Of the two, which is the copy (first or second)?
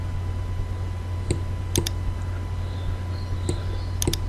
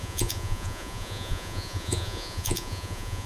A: second